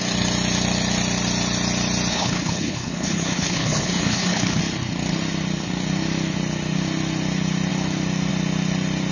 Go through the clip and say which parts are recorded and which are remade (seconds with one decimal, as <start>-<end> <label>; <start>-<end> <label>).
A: 0.0-2.1 recorded; 2.1-4.6 remade; 4.6-9.1 recorded